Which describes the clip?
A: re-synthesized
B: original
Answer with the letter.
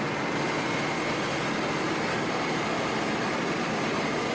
B